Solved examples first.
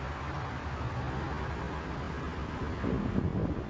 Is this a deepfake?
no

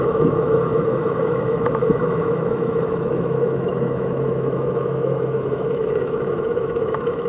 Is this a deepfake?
yes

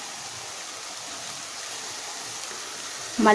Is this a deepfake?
no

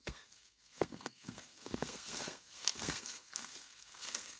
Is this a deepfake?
yes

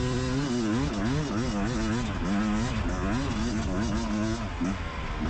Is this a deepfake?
no